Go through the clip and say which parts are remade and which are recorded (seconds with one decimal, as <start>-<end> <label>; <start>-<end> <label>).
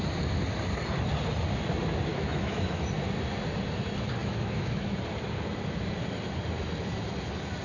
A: 0.0-2.1 recorded; 2.1-2.8 remade; 2.8-4.2 recorded; 4.2-5.0 remade; 5.0-7.6 recorded